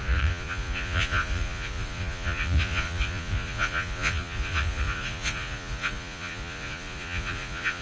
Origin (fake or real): fake